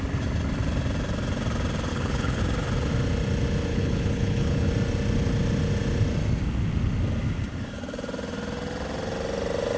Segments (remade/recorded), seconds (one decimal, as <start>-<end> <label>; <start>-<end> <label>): 0.0-1.9 recorded; 1.9-2.4 remade; 2.4-3.7 recorded; 3.7-4.7 remade; 4.7-9.8 recorded

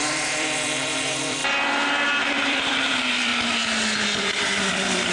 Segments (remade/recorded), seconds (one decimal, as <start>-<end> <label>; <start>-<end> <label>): 0.0-1.4 remade; 1.4-2.3 recorded; 2.3-3.3 remade; 3.3-4.2 recorded; 4.2-5.1 remade

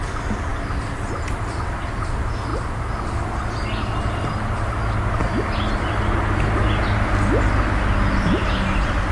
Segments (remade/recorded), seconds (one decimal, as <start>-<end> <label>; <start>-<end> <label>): 0.0-9.1 recorded

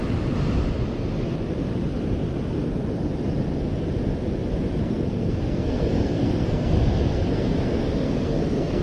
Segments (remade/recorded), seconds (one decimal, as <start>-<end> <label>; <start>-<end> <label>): 0.0-4.8 recorded; 4.8-8.8 remade

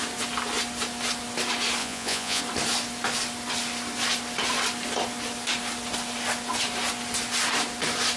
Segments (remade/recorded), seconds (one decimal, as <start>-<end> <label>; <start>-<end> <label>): 0.0-1.8 recorded; 1.8-2.4 remade; 2.4-8.2 recorded

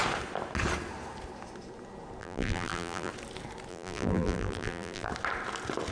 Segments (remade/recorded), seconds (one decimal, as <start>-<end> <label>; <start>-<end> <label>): 0.0-2.2 recorded; 2.2-3.1 remade; 3.1-3.7 recorded; 3.7-5.1 remade; 5.1-5.9 recorded

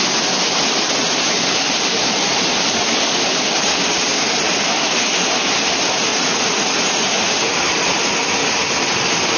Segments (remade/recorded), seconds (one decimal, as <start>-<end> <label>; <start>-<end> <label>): 0.0-6.1 recorded; 6.1-7.2 remade; 7.2-9.4 recorded

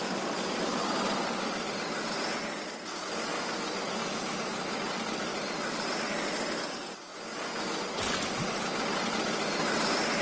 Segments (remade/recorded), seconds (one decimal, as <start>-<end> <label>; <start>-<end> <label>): 0.0-3.3 recorded; 3.3-3.9 remade; 3.9-5.3 recorded; 5.3-6.1 remade; 6.1-10.2 recorded